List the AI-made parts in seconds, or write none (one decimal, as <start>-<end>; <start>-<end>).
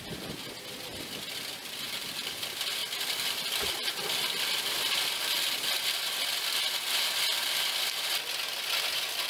none